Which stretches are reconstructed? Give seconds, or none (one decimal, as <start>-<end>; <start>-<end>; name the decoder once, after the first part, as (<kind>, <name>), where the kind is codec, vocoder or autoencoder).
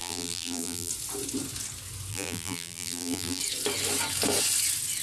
0.0-0.9 (vocoder, BigVGAN v2); 2.1-3.4